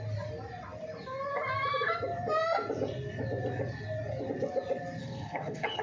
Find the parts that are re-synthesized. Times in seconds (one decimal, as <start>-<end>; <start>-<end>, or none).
5.0-5.8